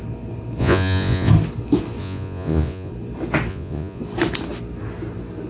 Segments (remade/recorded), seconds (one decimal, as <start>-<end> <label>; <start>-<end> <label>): 0.0-0.6 recorded; 0.6-1.3 remade; 1.3-2.0 recorded; 2.0-2.9 remade; 2.9-3.5 recorded; 3.5-4.0 remade; 4.0-5.5 recorded